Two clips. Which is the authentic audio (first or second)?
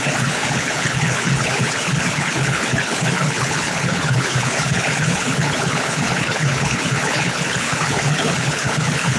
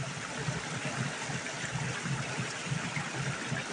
second